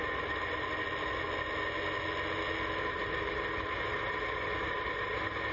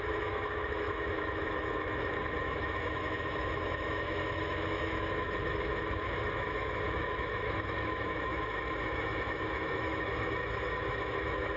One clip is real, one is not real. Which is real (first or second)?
first